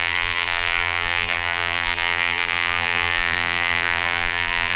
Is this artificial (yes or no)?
yes